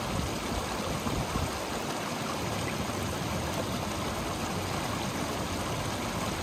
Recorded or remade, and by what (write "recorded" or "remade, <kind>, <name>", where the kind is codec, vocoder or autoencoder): recorded